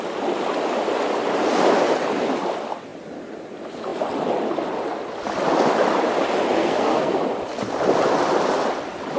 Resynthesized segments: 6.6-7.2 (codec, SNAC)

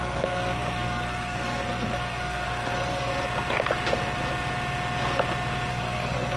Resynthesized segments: 0.0-3.1 (codec, SNAC); 5.7-6.4

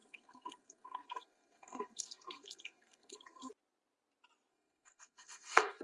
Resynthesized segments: 0.0-3.5 (codec, SNAC); 4.5-5.8

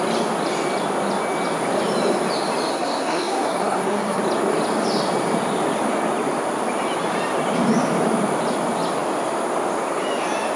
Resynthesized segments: 2.7-4.2 (codec, SNAC)

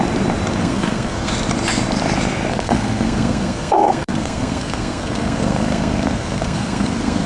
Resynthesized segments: 0.6-1.3 (codec, SNAC); 2.5-7.3